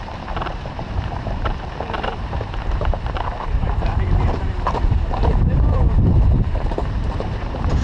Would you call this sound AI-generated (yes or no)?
yes